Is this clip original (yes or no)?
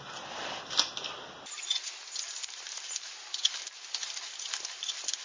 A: yes